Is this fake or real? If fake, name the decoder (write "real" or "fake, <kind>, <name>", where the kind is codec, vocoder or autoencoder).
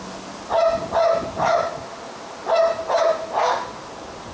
real